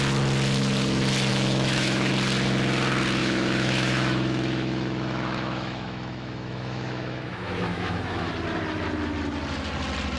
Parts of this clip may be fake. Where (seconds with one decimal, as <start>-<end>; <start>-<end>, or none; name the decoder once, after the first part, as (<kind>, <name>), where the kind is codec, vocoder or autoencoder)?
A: 1.3-2.1 (autoencoder, DAC-VAE); 3.2-8.3